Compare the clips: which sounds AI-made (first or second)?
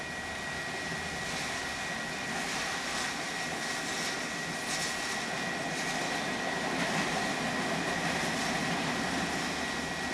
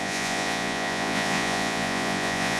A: second